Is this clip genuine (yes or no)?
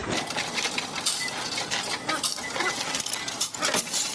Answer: yes